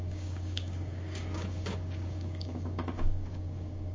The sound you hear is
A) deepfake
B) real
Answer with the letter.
A